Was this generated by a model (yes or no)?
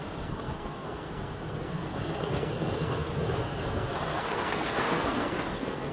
yes